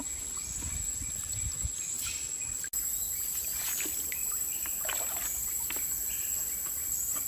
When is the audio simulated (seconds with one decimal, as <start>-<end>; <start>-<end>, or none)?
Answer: none

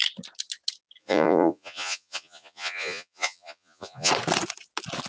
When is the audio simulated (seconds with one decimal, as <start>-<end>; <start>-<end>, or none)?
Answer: 1.0-4.1

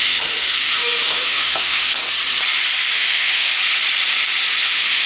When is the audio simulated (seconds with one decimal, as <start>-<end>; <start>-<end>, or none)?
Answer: 0.0-2.0; 2.9-3.5; 4.6-5.1

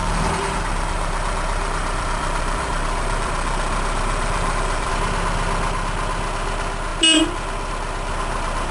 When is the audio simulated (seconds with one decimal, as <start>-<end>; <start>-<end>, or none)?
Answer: 0.0-4.9

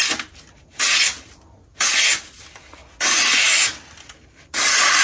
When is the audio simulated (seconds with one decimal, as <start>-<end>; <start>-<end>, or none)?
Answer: none

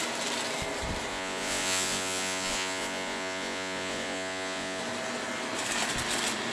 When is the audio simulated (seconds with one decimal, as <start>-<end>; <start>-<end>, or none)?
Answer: 1.1-4.8

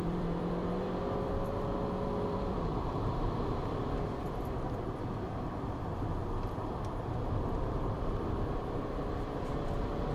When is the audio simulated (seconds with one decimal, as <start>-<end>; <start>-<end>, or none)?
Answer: 0.0-6.2; 6.7-10.1